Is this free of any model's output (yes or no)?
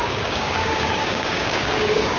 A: no